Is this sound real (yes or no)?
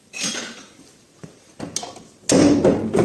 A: yes